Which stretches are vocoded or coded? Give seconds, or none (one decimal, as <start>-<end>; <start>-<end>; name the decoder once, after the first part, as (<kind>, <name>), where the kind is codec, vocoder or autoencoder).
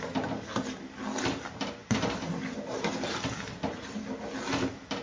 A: none